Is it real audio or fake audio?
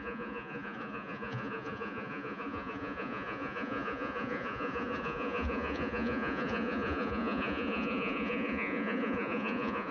fake